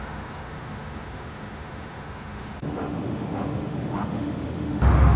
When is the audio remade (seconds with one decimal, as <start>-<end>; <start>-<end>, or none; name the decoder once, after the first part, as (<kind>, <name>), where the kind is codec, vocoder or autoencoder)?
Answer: 0.0-5.2 (autoencoder, DAC-VAE)